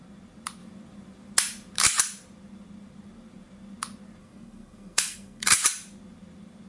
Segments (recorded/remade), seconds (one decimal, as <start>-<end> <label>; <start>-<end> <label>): 0.0-4.2 recorded; 4.2-5.6 remade; 5.6-6.7 recorded